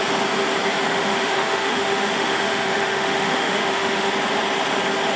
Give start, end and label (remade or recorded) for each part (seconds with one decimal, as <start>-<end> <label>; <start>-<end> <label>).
0.0-1.0 recorded; 1.0-4.1 remade; 4.1-5.2 recorded